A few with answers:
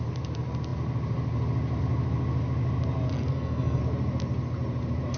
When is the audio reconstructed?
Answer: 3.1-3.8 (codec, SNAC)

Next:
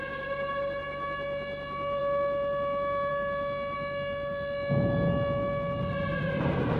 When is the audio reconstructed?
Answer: none